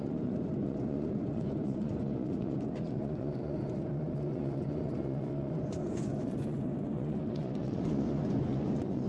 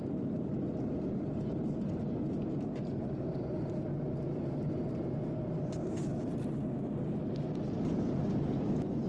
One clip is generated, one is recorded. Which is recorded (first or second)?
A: second